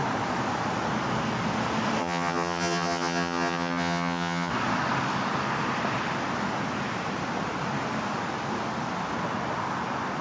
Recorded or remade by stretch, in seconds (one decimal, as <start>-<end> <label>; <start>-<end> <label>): 0.0-2.0 recorded; 2.0-4.5 remade; 4.5-10.2 recorded